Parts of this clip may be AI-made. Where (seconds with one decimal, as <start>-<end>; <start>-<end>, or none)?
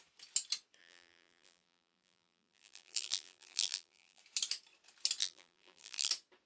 0.8-4.2; 5.2-6.1